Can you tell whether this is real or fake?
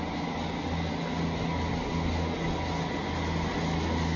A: real